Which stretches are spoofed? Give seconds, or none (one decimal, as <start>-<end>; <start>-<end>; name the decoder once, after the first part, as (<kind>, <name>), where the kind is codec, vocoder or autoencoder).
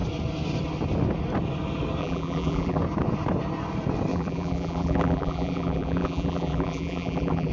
2.0-2.8 (vocoder, BigVGAN v2); 4.1-7.5